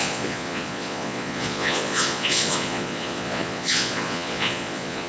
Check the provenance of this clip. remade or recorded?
remade